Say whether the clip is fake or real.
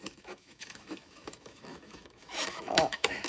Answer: fake